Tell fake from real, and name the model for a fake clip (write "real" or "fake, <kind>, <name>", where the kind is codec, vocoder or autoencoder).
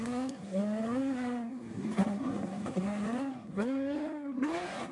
fake, codec, SNAC